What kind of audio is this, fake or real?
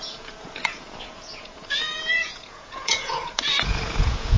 fake